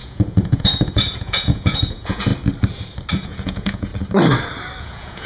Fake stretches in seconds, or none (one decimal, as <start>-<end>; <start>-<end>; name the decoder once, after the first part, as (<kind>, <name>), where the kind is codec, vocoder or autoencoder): 0.0-2.3 (vocoder, Vocos); 3.1-3.9; 4.8-5.3